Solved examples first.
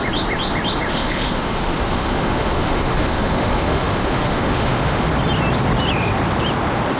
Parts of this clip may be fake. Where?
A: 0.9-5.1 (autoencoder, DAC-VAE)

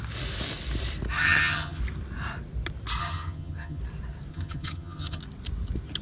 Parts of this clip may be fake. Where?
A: 1.2-1.8 (vocoder, HiFi-GAN); 3.0-3.8; 4.3-5.2

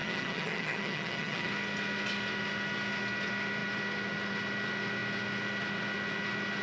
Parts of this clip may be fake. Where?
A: 0.0-1.5 (vocoder, HiFi-GAN)

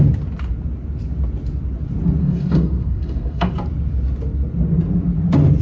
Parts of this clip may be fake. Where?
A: 2.2-3.5 (codec, SNAC)

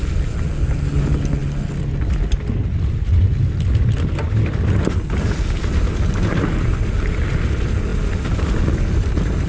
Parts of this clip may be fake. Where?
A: none